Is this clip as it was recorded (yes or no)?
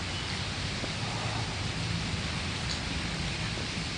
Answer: yes